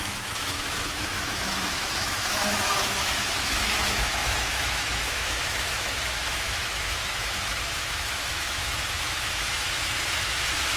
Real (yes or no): no